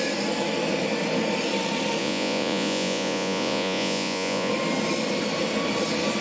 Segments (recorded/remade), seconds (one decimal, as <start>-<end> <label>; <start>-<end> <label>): 0.0-2.0 recorded; 2.0-4.5 remade; 4.5-6.2 recorded